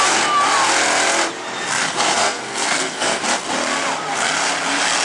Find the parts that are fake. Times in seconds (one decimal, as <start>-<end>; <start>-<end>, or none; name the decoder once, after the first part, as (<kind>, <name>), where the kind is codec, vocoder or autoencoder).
1.8-3.2 (codec, SNAC)